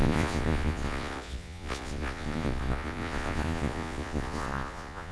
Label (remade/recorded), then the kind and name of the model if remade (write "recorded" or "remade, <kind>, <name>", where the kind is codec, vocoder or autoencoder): remade, vocoder, Vocos